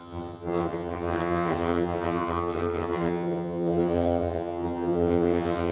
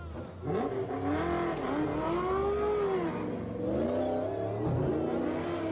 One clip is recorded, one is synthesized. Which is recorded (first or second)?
second